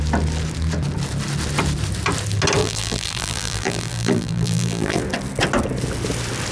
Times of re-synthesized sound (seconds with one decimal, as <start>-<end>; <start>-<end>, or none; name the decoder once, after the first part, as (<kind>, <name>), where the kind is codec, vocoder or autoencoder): 2.6-5.0 (vocoder, BigVGAN v2)